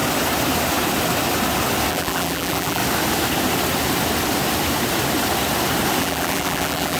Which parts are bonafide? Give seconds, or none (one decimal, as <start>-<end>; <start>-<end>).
0.0-1.9; 2.8-6.0